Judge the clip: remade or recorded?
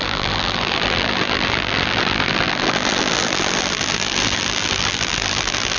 remade